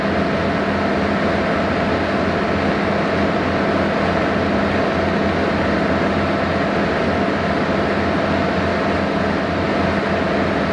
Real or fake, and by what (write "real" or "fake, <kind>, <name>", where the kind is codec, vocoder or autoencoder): real